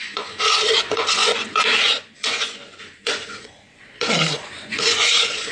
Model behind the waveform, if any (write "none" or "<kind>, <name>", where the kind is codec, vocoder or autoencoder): vocoder, Vocos